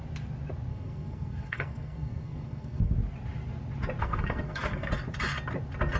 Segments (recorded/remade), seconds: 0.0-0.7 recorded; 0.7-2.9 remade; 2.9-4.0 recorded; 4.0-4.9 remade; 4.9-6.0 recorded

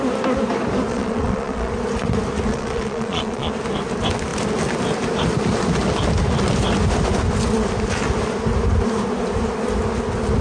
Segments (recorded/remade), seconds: 0.0-0.9 recorded; 0.9-1.7 remade; 1.7-2.5 recorded; 2.5-3.5 remade; 3.5-10.4 recorded

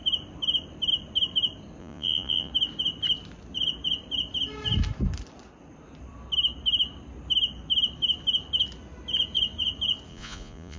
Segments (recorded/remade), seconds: 0.0-1.8 recorded; 1.8-2.5 remade; 2.5-10.1 recorded; 10.1-10.8 remade

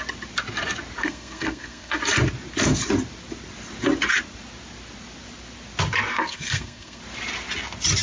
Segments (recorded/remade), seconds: 0.0-1.0 recorded; 1.0-2.0 remade; 2.0-6.1 recorded; 6.1-7.0 remade; 7.0-8.0 recorded

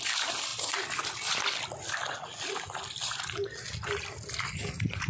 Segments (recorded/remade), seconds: 0.0-5.1 recorded